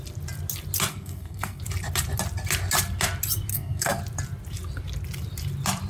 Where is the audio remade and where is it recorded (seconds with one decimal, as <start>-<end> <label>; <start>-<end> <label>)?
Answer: 0.0-0.9 recorded; 0.9-1.6 remade; 1.6-3.5 recorded; 3.5-4.0 remade; 4.0-5.9 recorded